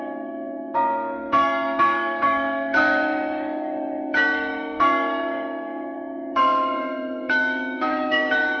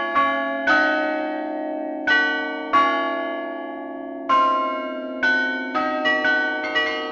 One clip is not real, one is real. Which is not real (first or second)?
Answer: first